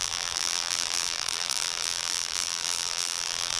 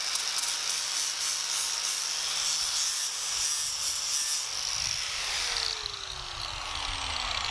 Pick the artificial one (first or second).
first